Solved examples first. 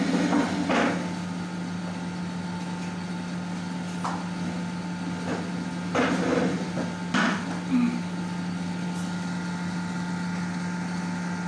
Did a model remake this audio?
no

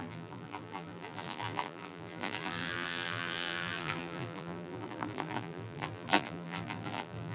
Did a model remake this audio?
yes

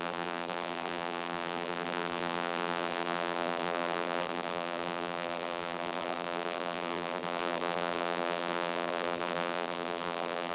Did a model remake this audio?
yes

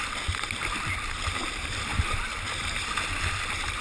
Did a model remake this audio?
no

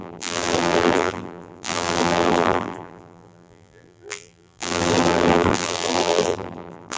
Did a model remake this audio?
yes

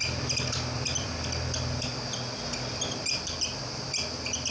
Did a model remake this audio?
yes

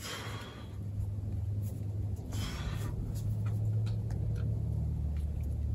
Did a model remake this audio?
no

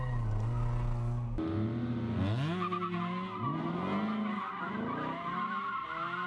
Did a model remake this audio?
no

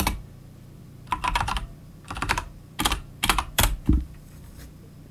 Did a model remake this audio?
yes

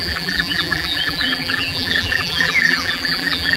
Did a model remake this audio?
yes